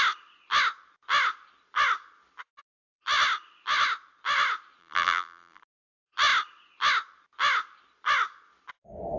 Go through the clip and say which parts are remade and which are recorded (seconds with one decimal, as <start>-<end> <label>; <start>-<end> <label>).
0.0-4.8 recorded; 4.8-5.6 remade; 5.6-9.2 recorded